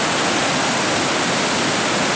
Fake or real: real